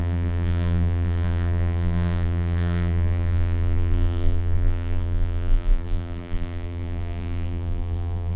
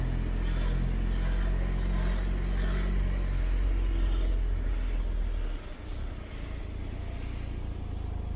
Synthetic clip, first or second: first